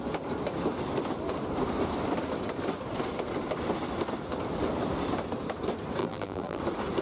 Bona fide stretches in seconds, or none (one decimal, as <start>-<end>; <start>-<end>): 0.0-6.0; 6.6-7.0